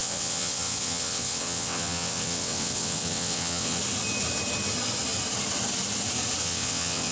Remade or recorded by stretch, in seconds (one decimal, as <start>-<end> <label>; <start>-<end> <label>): 0.0-3.8 remade; 3.8-6.4 recorded; 6.4-7.1 remade